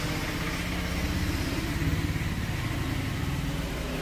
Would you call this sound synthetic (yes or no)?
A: no